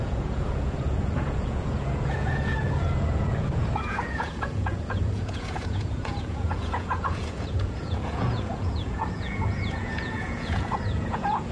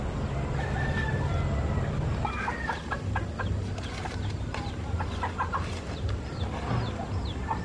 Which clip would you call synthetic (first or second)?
first